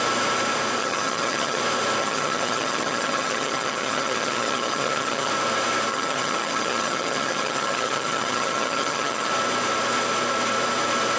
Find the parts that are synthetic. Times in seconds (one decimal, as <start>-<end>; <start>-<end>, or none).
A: 0.8-1.6; 2.0-5.3; 5.9-9.3